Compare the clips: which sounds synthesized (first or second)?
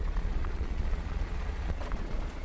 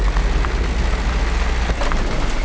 first